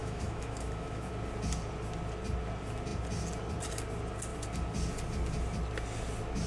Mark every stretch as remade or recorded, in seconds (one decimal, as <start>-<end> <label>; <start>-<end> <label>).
0.0-1.1 remade; 1.1-6.5 recorded